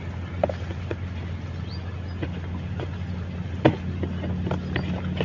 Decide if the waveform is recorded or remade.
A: recorded